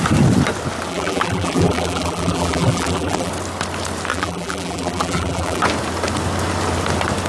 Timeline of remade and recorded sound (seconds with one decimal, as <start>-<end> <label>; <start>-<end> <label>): 0.0-0.9 recorded; 0.9-3.3 remade; 3.3-4.1 recorded; 4.1-5.6 remade; 5.6-7.3 recorded